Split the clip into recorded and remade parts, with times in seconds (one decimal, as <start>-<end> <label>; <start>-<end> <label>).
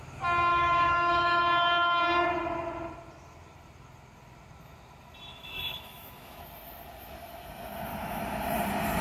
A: 0.0-0.5 recorded; 0.5-1.4 remade; 1.4-5.3 recorded; 5.3-6.4 remade; 6.4-7.9 recorded; 7.9-8.4 remade; 8.4-9.0 recorded